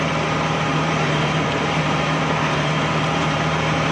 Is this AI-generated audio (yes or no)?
yes